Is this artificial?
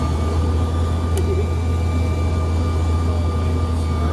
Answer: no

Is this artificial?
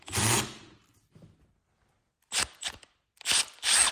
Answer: no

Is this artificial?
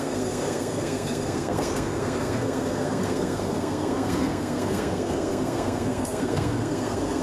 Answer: yes